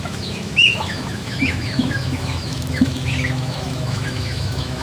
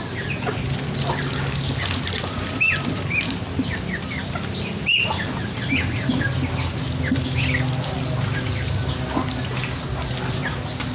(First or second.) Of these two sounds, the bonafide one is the second